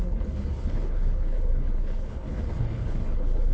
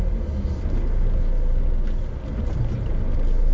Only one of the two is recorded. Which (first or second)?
second